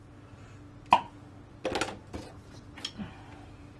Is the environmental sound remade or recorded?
recorded